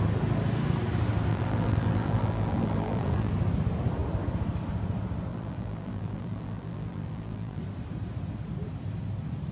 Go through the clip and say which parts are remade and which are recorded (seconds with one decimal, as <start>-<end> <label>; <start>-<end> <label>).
0.0-1.3 recorded; 1.3-3.3 remade; 3.3-5.3 recorded; 5.3-7.6 remade; 7.6-9.5 recorded